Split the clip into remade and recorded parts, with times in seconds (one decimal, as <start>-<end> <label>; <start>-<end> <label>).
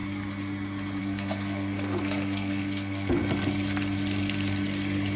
0.0-1.0 recorded; 1.0-3.2 remade; 3.2-5.2 recorded